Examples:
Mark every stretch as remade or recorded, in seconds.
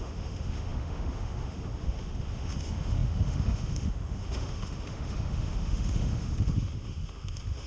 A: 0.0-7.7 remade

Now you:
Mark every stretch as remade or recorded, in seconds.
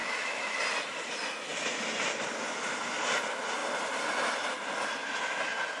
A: 0.0-0.6 remade; 0.6-5.8 recorded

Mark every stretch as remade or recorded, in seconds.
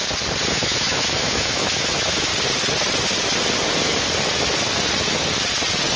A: 0.0-0.5 recorded; 0.5-2.3 remade; 2.3-6.0 recorded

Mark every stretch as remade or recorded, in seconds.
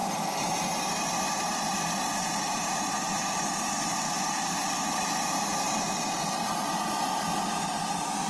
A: 0.0-8.3 recorded